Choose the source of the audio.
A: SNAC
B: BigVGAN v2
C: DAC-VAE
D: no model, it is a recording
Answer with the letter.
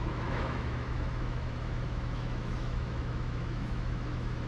C